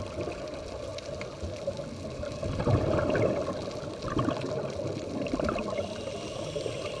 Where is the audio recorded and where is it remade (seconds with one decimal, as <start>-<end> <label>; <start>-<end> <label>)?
0.0-7.0 recorded